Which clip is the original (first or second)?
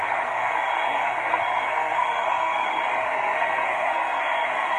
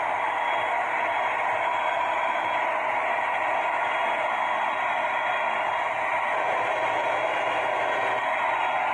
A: second